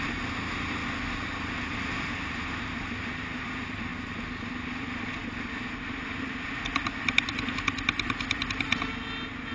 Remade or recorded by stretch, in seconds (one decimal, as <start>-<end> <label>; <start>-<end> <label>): 0.0-9.5 recorded